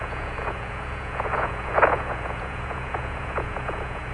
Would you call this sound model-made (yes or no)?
yes